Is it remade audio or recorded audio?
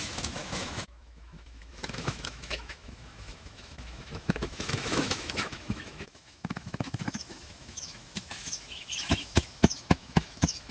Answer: remade